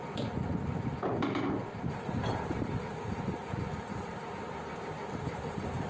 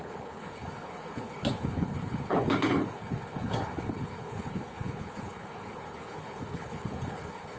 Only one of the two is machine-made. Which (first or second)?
second